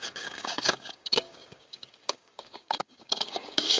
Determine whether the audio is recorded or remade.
remade